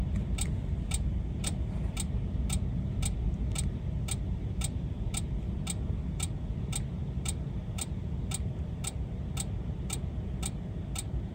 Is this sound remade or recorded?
recorded